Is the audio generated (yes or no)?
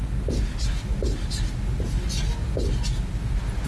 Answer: no